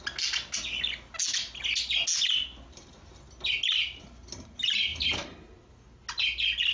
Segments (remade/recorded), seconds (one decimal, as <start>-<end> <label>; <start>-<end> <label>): 0.0-4.9 recorded; 4.9-5.7 remade; 5.7-6.7 recorded